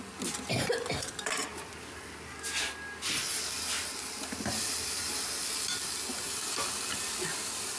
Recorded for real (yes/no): yes